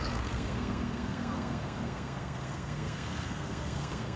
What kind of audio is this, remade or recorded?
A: remade